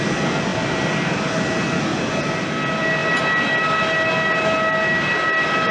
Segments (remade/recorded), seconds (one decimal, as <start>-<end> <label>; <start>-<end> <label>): 0.0-5.7 recorded